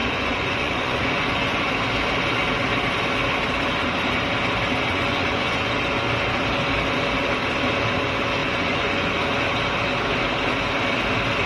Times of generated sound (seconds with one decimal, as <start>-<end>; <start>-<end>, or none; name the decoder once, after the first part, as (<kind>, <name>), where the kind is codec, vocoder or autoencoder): 0.0-1.7 (vocoder, Vocos); 4.9-5.7; 8.4-9.1